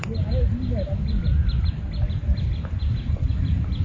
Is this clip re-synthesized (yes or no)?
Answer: no